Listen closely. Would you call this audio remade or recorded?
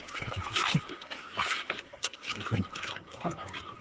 remade